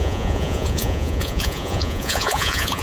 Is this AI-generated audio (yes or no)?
yes